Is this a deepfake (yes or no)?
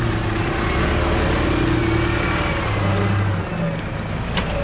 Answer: no